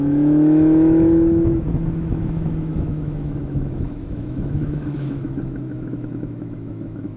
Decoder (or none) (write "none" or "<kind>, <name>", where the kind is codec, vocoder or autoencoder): autoencoder, DAC-VAE